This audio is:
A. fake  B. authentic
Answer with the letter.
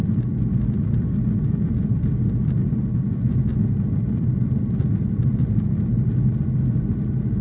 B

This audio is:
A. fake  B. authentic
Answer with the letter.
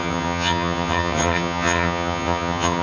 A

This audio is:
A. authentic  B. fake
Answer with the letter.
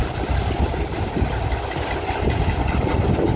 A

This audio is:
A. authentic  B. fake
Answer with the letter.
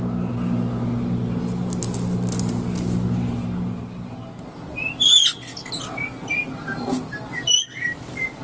A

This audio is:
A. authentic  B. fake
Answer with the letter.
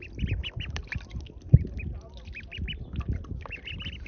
A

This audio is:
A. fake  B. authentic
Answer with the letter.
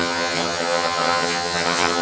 A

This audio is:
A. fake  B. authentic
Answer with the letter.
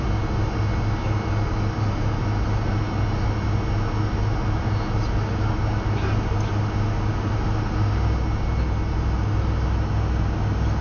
B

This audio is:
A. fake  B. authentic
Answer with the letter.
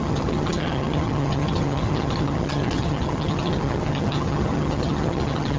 A